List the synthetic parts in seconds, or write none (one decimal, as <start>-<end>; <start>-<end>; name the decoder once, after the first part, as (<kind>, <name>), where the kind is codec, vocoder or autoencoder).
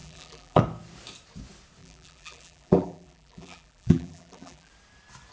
0.0-0.6 (vocoder, BigVGAN v2); 1.8-4.7